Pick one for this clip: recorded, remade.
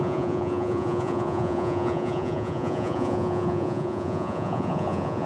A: remade